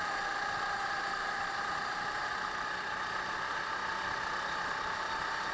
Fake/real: real